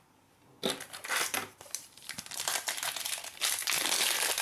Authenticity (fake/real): real